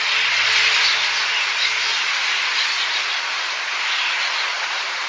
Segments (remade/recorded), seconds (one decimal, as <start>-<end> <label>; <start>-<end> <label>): 0.0-5.1 recorded